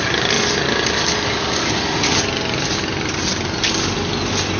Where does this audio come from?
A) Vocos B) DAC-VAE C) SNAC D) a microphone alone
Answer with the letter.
D